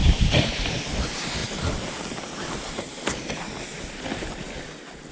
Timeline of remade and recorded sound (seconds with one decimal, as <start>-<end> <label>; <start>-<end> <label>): 0.0-5.1 recorded